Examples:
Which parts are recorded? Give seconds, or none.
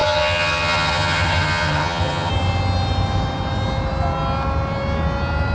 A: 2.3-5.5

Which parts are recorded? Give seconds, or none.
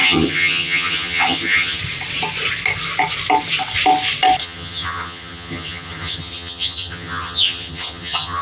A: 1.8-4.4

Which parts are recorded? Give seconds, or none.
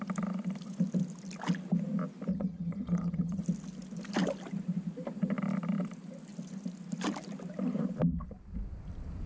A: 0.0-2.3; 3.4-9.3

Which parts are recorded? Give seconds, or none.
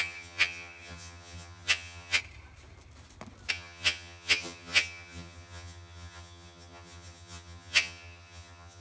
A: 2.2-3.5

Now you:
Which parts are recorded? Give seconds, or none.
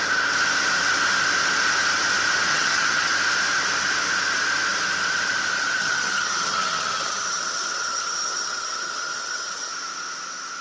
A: 0.0-2.5; 3.1-5.8; 9.7-10.6